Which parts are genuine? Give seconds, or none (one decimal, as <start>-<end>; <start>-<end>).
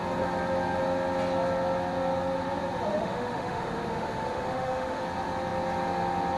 0.0-2.9; 5.0-6.4